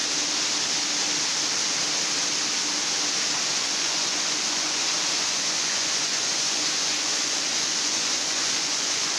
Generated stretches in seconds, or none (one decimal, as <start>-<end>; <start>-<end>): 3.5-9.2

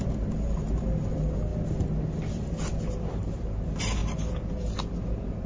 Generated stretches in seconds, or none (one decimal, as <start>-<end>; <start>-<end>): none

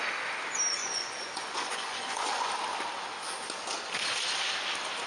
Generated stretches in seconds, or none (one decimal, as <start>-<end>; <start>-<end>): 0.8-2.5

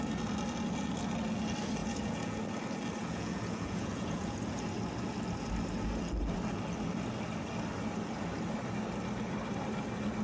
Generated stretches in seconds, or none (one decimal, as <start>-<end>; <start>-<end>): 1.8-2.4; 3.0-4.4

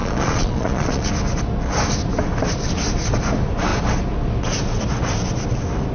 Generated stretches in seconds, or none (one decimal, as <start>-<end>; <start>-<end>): 0.0-1.1